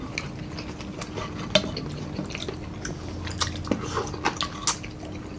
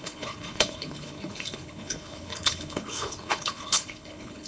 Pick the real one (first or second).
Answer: first